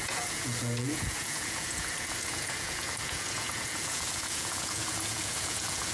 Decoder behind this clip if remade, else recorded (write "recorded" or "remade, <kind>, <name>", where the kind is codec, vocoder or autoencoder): remade, vocoder, Vocos